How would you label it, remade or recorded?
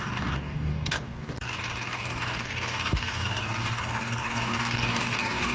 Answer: remade